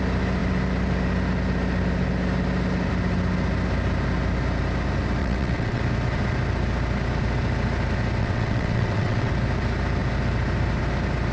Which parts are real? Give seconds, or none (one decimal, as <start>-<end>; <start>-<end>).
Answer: 0.0-5.2; 5.8-8.2; 9.3-11.3